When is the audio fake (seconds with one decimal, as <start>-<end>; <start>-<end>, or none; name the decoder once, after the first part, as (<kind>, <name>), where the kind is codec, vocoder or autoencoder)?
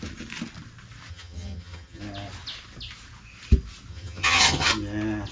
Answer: 1.1-2.0 (vocoder, HiFi-GAN); 3.9-4.7